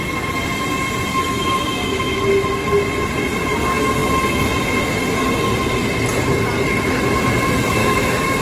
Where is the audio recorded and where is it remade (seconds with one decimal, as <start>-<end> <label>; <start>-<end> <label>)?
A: 0.0-1.1 recorded; 1.1-2.2 remade; 2.2-7.8 recorded; 7.8-8.4 remade